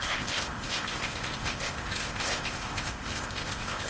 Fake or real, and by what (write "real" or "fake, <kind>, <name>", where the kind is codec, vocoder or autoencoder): fake, codec, ZipCodec